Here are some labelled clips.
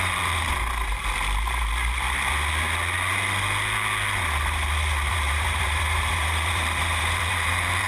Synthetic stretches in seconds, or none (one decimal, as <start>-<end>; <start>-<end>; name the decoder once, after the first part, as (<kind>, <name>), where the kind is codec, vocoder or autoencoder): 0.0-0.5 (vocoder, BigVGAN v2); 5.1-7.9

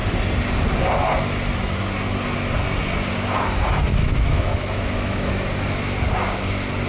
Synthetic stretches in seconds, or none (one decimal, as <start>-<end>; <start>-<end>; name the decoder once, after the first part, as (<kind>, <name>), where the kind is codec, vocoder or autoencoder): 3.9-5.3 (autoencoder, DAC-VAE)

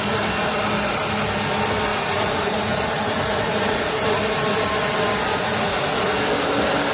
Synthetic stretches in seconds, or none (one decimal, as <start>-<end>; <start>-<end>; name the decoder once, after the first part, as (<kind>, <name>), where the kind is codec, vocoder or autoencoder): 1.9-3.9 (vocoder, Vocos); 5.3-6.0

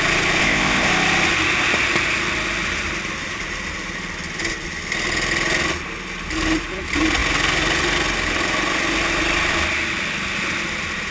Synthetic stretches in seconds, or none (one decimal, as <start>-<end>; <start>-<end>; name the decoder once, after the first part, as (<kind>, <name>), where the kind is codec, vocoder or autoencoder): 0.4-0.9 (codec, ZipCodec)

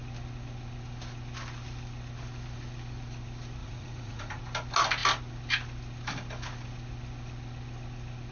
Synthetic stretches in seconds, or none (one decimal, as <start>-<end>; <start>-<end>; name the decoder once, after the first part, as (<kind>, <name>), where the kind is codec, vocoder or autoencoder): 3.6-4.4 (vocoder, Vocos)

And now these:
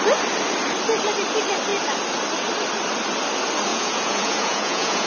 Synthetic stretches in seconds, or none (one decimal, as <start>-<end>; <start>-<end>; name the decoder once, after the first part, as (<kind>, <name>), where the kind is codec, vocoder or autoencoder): 3.7-5.1 (vocoder, Vocos)

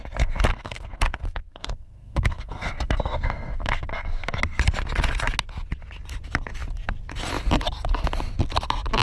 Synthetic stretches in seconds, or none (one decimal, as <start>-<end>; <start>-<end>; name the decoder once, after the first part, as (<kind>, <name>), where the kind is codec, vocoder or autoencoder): 0.5-4.3 (codec, SNAC)